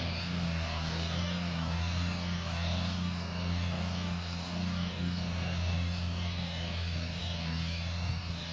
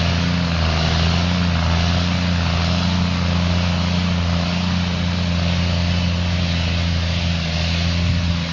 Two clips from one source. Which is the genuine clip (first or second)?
second